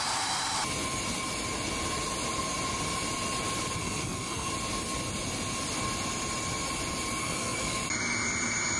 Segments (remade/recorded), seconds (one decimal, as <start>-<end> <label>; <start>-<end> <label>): 0.0-3.8 recorded; 3.8-4.5 remade; 4.5-7.2 recorded; 7.2-7.8 remade; 7.8-8.8 recorded